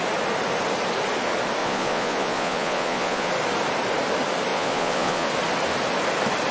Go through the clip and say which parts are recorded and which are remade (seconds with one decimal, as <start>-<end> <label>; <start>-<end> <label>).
0.0-1.6 recorded; 1.6-3.3 remade; 3.3-4.5 recorded; 4.5-5.3 remade; 5.3-6.5 recorded